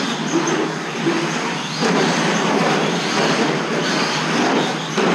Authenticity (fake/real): real